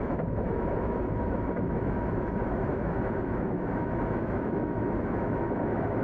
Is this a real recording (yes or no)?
no